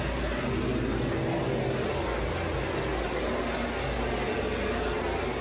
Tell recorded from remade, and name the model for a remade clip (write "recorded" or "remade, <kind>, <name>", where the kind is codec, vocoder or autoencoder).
recorded